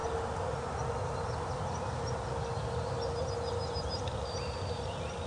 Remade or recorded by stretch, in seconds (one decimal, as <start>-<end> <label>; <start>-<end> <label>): 0.0-5.3 recorded